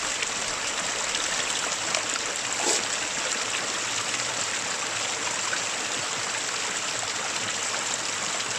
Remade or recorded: recorded